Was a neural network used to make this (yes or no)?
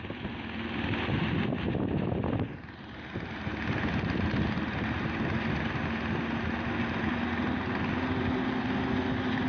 no